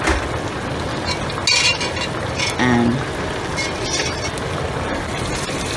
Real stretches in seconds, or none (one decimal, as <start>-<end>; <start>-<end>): 0.0-5.8